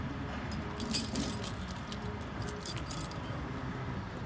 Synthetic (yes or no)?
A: no